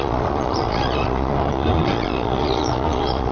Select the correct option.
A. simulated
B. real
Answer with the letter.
A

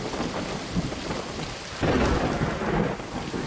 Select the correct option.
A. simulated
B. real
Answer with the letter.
B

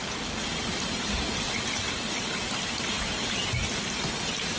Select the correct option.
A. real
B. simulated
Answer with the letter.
A